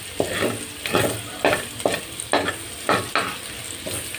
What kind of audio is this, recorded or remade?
recorded